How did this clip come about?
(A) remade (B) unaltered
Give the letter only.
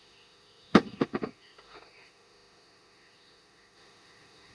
A